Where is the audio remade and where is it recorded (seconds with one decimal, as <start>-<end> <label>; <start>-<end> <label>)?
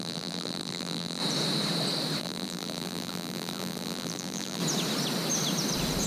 0.0-1.2 remade; 1.2-2.2 recorded; 2.2-4.6 remade; 4.6-6.1 recorded